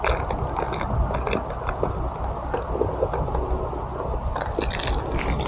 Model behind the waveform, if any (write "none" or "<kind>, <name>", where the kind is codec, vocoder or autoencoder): none